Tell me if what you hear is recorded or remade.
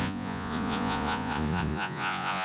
remade